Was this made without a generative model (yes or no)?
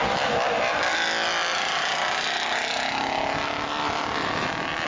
yes